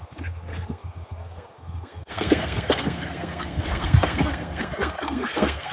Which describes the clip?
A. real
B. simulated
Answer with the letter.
B